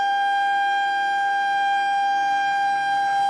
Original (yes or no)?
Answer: yes